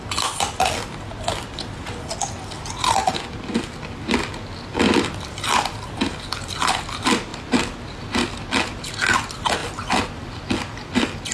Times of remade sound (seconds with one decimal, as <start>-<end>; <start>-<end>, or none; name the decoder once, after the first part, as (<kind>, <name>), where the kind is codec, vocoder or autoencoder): none